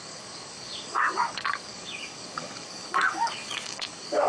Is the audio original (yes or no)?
no